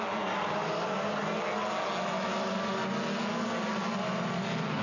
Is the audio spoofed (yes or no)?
no